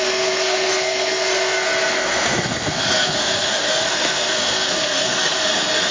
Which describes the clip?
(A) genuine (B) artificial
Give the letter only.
B